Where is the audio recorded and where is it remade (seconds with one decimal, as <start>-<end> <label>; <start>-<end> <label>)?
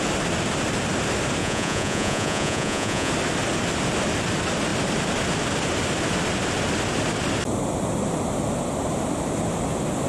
0.0-1.4 recorded; 1.4-3.1 remade; 3.1-10.1 recorded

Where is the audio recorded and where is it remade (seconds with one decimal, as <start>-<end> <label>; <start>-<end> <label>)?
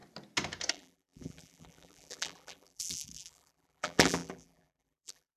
0.0-0.7 recorded; 0.7-5.4 remade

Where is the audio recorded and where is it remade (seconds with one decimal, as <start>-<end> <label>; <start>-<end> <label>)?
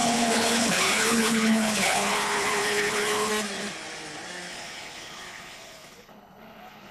0.0-3.3 remade; 3.3-4.5 recorded; 4.5-6.9 remade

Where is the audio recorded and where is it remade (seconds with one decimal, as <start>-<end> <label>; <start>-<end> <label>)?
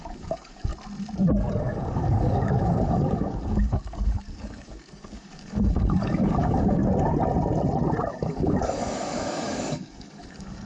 0.0-0.7 remade; 0.7-1.6 recorded; 1.6-6.8 remade; 6.8-8.1 recorded; 8.1-10.7 remade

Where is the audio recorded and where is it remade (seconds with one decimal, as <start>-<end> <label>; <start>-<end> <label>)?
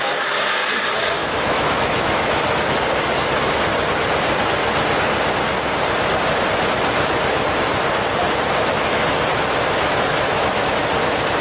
0.0-1.2 recorded; 1.2-2.6 remade; 2.6-10.1 recorded; 10.1-10.6 remade; 10.6-11.4 recorded